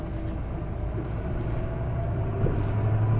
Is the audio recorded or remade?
recorded